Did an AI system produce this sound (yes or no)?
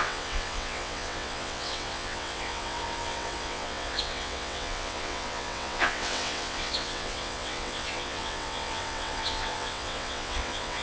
yes